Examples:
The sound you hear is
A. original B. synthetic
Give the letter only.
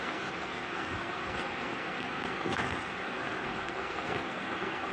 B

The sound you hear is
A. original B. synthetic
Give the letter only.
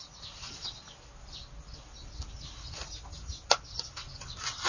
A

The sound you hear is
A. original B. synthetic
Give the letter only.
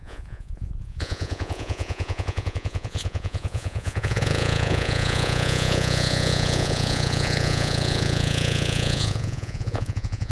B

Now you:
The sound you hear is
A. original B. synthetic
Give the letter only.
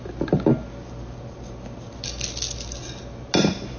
A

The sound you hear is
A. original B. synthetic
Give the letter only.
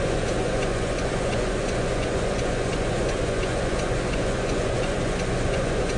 B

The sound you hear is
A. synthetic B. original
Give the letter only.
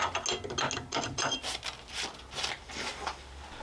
B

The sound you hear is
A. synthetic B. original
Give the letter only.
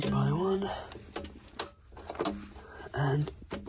B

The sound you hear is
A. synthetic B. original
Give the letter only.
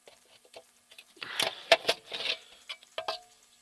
B